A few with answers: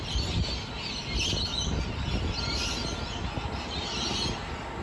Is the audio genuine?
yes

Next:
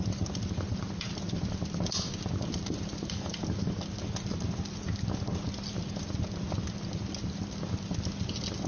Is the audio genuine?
yes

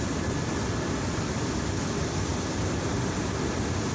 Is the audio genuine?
yes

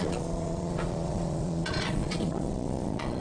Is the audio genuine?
no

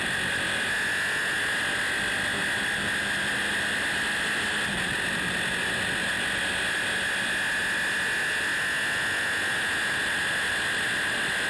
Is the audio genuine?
yes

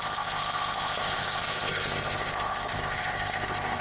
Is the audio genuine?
no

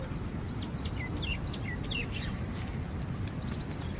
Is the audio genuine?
yes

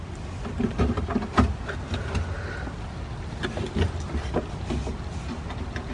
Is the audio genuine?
yes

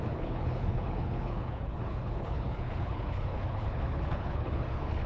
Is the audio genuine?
no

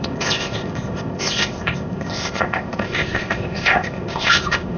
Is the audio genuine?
no